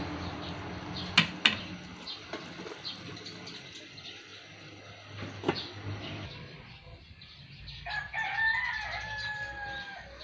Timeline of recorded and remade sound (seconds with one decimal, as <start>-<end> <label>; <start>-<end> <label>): 0.0-10.2 recorded